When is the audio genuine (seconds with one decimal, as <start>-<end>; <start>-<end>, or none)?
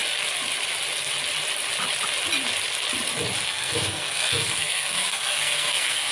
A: 0.0-3.4